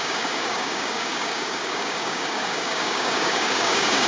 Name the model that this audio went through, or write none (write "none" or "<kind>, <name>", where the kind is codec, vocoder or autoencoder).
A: codec, DAC